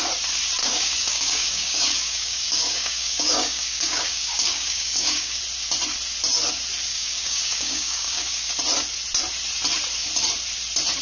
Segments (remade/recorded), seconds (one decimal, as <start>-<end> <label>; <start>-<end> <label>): 0.0-0.6 recorded; 0.6-5.4 remade; 5.4-6.9 recorded; 6.9-8.5 remade; 8.5-11.0 recorded